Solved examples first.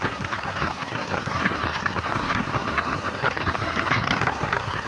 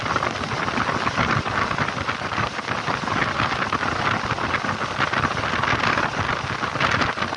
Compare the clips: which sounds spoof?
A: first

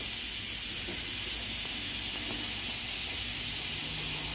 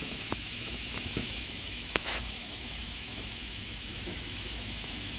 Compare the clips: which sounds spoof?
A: second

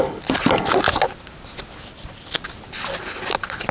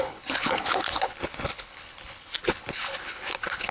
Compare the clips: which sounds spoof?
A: second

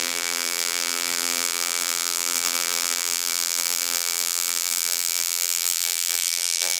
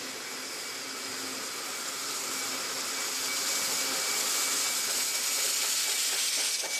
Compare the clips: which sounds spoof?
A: first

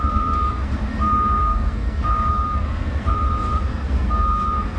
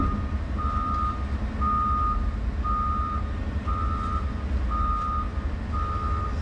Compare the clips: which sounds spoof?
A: first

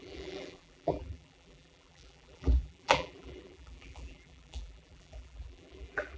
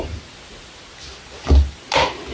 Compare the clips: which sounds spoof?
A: first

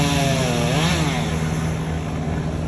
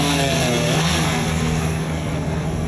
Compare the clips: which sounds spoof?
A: second